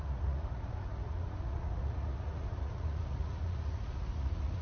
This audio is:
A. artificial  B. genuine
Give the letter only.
A